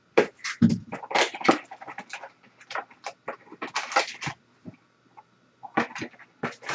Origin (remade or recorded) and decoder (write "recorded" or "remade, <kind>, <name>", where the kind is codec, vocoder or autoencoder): recorded